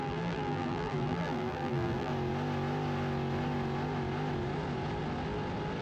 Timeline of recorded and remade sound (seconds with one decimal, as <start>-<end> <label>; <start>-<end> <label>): 0.0-2.1 remade; 2.1-5.8 recorded